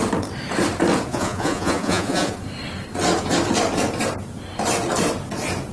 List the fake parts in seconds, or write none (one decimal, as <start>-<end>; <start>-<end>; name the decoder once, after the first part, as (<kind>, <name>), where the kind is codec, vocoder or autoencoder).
1.1-2.4 (vocoder, Vocos)